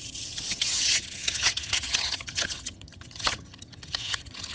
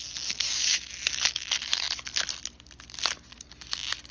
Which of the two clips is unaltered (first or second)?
second